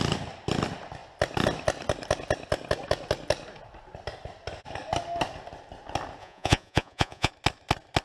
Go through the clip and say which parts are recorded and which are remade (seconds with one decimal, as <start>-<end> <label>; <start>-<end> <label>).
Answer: 0.0-6.2 recorded; 6.2-7.3 remade; 7.3-8.0 recorded

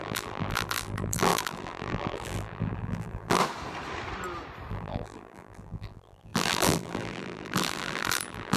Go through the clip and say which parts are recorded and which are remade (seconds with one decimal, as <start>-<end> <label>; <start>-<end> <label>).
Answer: 0.0-3.4 remade; 3.4-4.7 recorded; 4.7-8.6 remade

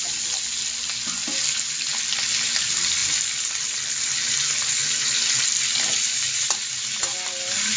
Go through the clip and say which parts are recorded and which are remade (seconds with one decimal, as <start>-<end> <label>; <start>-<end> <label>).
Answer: 0.0-7.8 recorded

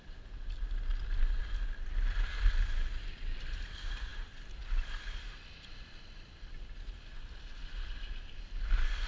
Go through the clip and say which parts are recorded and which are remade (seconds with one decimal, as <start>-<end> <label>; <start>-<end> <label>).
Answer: 0.0-9.1 recorded